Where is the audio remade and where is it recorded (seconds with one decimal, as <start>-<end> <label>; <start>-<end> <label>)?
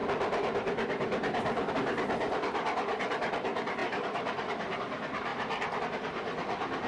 0.0-1.7 remade; 1.7-3.8 recorded; 3.8-4.8 remade; 4.8-5.3 recorded; 5.3-5.8 remade; 5.8-6.9 recorded